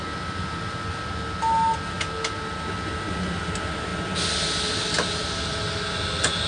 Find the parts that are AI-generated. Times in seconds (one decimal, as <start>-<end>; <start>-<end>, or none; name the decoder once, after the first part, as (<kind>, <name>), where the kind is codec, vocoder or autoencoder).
none

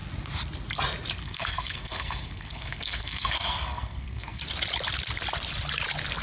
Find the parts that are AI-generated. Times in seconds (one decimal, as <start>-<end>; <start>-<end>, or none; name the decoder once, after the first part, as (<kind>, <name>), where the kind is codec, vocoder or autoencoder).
1.2-4.4 (codec, SNAC)

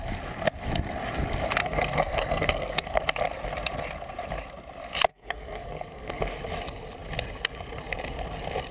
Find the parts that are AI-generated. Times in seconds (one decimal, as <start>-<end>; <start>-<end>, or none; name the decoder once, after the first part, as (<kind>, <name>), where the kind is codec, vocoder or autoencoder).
1.6-3.0 (codec, SNAC); 5.1-6.2

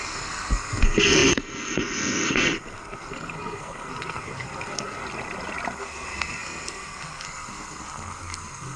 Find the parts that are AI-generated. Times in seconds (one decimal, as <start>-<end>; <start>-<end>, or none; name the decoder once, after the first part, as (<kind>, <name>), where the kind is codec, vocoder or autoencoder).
0.0-5.0 (codec, SNAC); 5.8-8.8